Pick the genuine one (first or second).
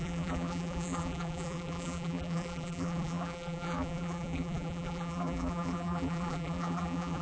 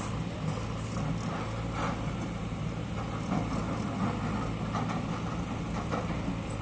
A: second